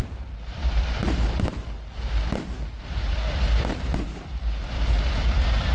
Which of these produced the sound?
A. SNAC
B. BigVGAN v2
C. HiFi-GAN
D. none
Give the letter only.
B